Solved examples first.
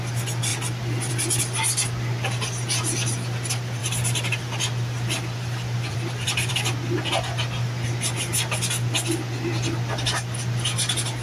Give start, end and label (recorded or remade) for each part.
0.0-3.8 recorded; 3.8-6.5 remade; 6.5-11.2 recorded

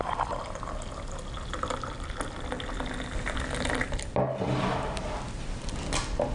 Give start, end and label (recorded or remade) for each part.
0.0-6.3 recorded

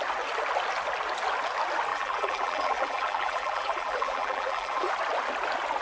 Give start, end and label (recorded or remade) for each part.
0.0-1.9 recorded; 1.9-4.9 remade; 4.9-5.8 recorded

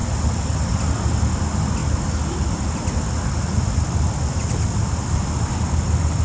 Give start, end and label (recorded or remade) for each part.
0.0-6.2 recorded

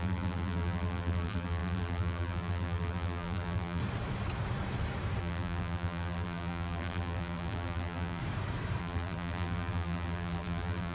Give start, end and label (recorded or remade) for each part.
0.0-3.8 remade; 3.8-5.2 recorded; 5.2-8.2 remade; 8.2-8.8 recorded; 8.8-10.9 remade